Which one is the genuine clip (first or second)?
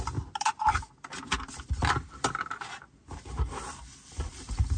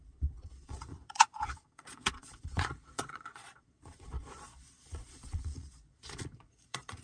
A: first